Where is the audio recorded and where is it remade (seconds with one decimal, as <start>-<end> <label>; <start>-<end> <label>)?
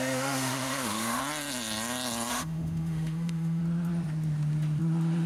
0.0-1.2 remade; 1.2-2.3 recorded; 2.3-3.6 remade; 3.6-5.3 recorded